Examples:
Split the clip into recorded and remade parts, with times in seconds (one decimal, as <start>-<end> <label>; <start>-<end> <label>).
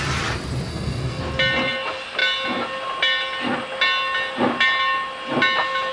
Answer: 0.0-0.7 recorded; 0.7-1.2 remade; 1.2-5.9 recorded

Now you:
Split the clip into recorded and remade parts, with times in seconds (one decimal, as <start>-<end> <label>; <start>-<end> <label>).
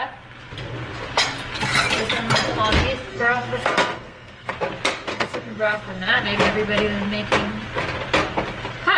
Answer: 0.0-3.1 recorded; 3.1-4.5 remade; 4.5-5.1 recorded; 5.1-6.2 remade; 6.2-9.0 recorded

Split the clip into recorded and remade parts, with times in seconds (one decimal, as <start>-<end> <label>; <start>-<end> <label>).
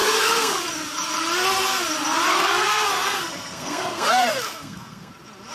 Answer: 0.0-0.6 remade; 0.6-2.3 recorded; 2.3-5.1 remade; 5.1-5.5 recorded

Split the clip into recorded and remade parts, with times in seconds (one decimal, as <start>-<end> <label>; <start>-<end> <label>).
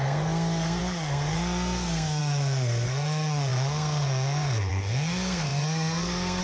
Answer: 0.0-6.4 remade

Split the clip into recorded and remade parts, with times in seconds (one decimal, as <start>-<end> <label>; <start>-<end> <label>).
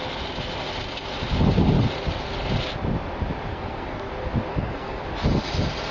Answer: 0.0-3.5 recorded; 3.5-4.1 remade; 4.1-4.5 recorded; 4.5-5.0 remade; 5.0-5.9 recorded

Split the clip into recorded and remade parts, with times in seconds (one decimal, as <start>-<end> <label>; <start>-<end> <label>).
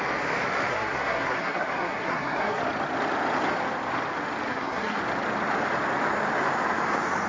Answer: 0.0-0.7 recorded; 0.7-2.6 remade; 2.6-4.5 recorded; 4.5-5.0 remade; 5.0-7.3 recorded